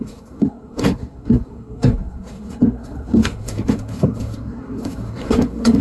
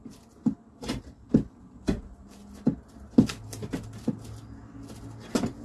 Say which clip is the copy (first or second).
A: first